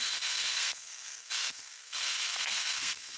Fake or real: fake